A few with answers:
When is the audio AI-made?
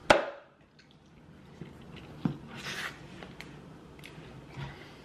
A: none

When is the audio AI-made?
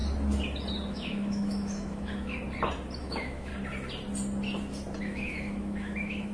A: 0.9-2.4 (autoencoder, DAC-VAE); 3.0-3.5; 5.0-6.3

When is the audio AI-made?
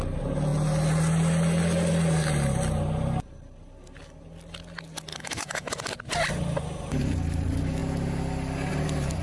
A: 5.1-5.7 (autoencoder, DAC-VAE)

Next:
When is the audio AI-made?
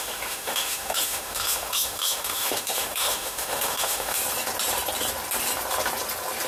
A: 0.0-4.2 (autoencoder, DAC-VAE)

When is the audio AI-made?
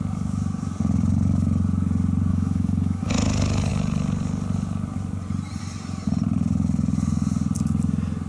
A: 2.3-3.1 (autoencoder, DAC-VAE)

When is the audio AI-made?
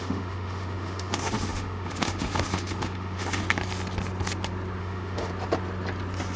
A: 0.0-3.4 (autoencoder, DAC-VAE); 4.8-5.3